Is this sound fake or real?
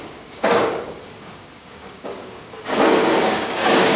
fake